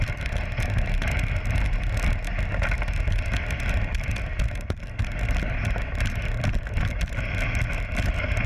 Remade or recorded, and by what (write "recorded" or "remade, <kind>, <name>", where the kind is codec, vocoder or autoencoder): recorded